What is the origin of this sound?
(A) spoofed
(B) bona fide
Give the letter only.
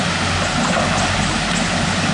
B